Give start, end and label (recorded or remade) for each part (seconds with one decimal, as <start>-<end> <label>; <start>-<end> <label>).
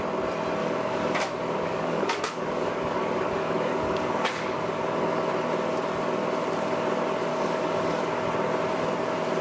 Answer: 0.0-0.6 recorded; 0.6-5.3 remade; 5.3-7.3 recorded; 7.3-8.3 remade; 8.3-9.4 recorded